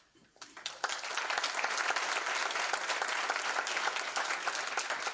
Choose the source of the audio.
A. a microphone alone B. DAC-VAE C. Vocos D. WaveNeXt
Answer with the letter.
A